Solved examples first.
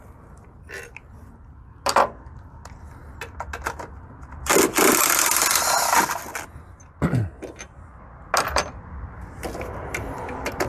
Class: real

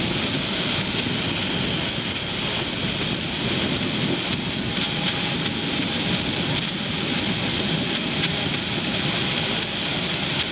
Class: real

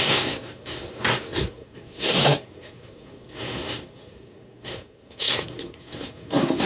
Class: fake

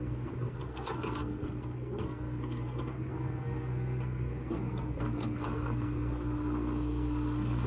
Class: fake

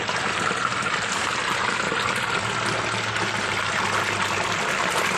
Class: real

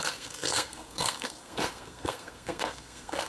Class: fake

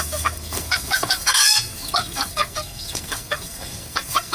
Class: fake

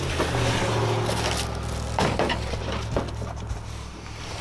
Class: real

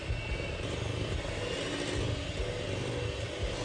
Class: real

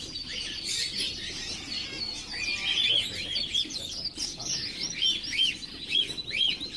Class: real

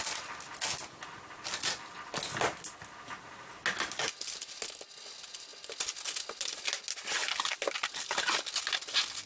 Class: real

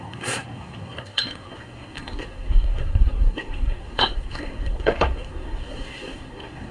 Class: fake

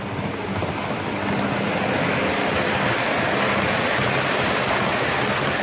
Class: real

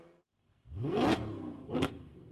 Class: fake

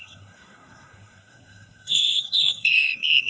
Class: fake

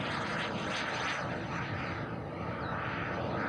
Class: real